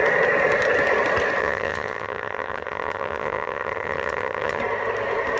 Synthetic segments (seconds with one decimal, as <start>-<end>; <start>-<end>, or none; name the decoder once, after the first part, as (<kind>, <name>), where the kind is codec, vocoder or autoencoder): 1.4-4.6 (vocoder, HiFi-GAN)